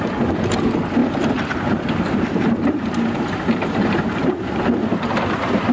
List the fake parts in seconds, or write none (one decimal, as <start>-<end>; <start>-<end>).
1.0-4.4